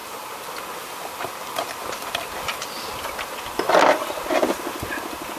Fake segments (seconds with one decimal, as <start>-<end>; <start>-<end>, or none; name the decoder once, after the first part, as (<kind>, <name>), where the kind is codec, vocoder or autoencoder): 0.0-2.8 (vocoder, BigVGAN v2)